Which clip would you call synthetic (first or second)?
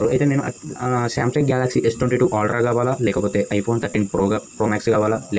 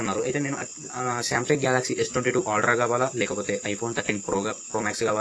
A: second